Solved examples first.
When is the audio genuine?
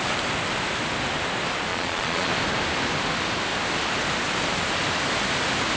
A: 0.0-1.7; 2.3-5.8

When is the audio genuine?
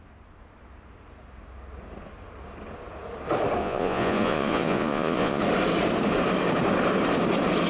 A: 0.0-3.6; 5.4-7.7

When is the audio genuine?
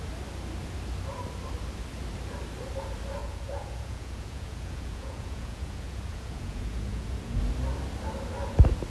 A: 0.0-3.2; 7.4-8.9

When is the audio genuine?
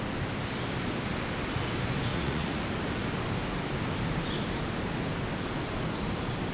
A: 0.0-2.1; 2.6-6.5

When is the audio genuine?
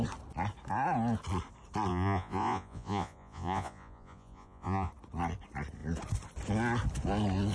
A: 0.0-1.9; 4.9-7.5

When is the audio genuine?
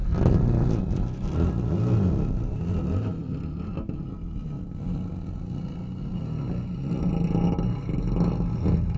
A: 0.0-9.0